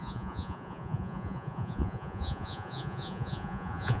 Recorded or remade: remade